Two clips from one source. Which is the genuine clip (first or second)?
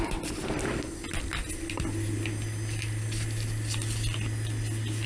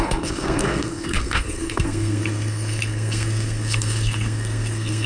first